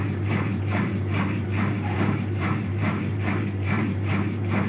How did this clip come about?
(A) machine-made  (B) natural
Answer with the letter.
A